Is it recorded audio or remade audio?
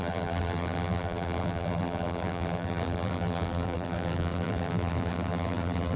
remade